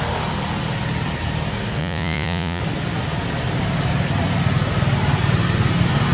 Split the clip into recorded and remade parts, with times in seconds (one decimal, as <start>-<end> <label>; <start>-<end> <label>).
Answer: 0.0-1.8 recorded; 1.8-2.6 remade; 2.6-6.1 recorded